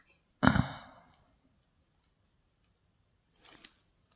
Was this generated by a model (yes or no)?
no